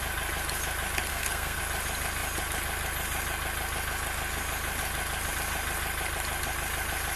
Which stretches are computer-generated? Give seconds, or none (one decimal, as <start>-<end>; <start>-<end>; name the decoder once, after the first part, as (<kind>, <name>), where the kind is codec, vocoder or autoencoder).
1.1-1.6 (codec, SNAC)